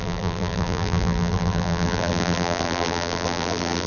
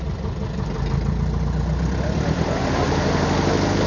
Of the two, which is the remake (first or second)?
first